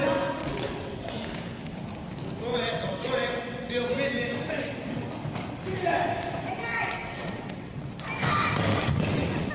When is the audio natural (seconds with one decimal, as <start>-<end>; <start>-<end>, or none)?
0.0-0.4; 1.1-2.5; 3.7-6.7; 7.9-8.7